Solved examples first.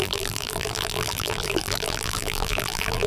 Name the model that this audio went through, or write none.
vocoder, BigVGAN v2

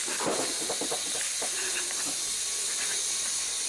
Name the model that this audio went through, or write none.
none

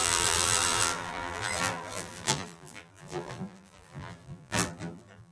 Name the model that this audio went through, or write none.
vocoder, BigVGAN v2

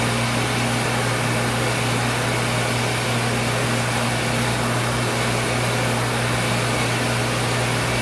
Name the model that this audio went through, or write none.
none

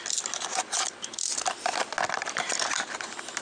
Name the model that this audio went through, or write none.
none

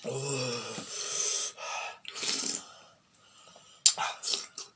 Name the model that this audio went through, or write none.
none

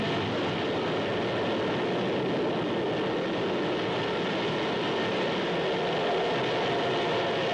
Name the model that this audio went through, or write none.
none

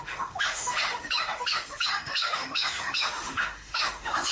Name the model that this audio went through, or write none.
autoencoder, DAC-VAE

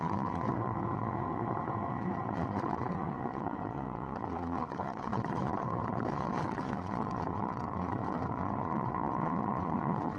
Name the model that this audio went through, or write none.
vocoder, WaveNeXt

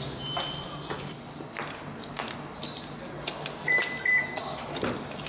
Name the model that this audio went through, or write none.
none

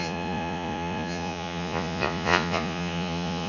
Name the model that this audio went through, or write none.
vocoder, Vocos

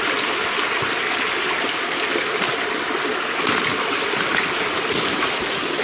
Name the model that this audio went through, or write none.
none